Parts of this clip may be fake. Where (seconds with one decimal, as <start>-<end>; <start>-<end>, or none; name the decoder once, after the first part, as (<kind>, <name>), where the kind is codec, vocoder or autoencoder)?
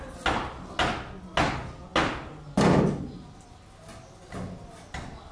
none